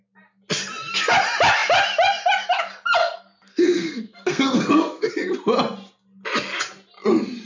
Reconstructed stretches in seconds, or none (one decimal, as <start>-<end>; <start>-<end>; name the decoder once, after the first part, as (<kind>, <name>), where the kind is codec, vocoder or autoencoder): 3.0-5.1 (codec, SNAC)